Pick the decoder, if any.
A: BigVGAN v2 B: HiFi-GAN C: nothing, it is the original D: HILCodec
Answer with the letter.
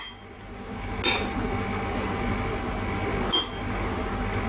C